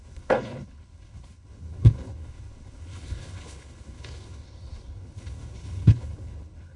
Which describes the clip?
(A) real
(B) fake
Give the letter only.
B